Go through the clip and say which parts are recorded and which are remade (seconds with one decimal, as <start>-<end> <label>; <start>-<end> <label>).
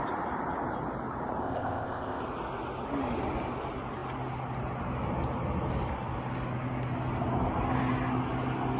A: 0.0-1.4 recorded; 1.4-2.2 remade; 2.2-8.8 recorded